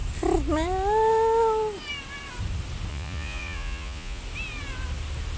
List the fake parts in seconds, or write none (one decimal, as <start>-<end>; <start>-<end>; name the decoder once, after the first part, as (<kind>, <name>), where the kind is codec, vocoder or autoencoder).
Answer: 2.9-4.2 (vocoder, Vocos)